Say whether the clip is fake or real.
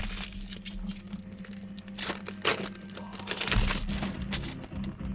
real